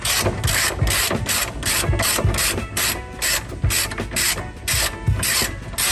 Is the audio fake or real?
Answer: real